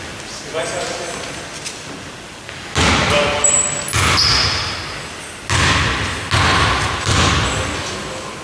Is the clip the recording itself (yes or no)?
yes